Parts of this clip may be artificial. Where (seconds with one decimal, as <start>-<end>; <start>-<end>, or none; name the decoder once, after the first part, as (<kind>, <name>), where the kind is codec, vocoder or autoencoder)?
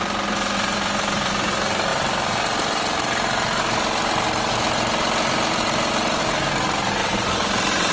none